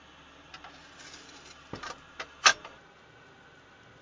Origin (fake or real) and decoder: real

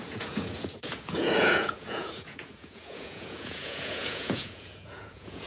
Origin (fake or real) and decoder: fake, vocoder, Vocos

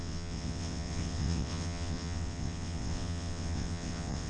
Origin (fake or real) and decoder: fake, vocoder, WaveNeXt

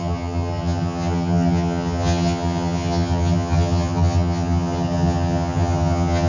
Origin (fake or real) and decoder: fake, vocoder, HiFi-GAN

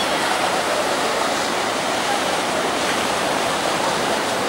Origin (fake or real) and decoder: fake, vocoder, BigVGAN v2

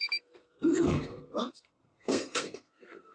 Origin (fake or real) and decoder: fake, codec, SNAC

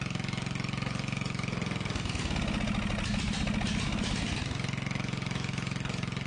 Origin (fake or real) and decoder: real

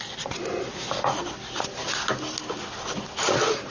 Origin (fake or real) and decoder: real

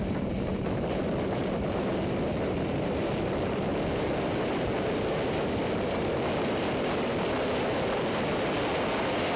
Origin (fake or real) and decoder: fake, vocoder, BigVGAN v2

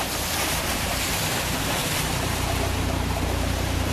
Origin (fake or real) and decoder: fake, vocoder, BigVGAN v2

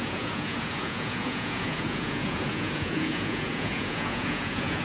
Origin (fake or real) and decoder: fake, vocoder, Vocos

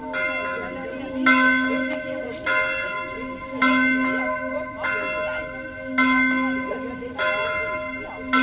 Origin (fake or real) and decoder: real